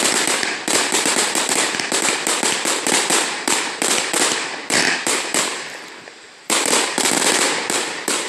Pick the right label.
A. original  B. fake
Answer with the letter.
B